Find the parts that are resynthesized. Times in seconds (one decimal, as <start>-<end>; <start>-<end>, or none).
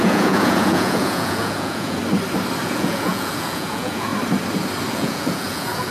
0.0-2.0; 2.6-4.1; 4.9-5.9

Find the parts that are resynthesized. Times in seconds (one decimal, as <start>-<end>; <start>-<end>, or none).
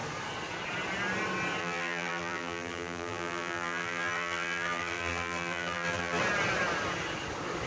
1.6-6.2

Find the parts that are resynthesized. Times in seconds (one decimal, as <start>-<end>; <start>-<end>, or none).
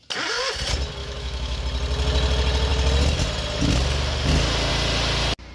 1.0-1.6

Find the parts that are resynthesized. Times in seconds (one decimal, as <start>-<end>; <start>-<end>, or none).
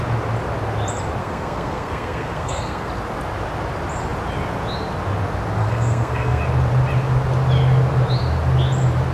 1.2-2.9; 5.6-6.4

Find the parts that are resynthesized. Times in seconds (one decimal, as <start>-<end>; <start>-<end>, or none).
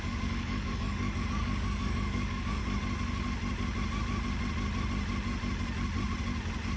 0.0-2.6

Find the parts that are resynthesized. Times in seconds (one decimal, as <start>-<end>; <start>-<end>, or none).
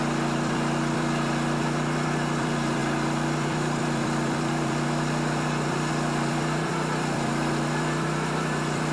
0.0-8.9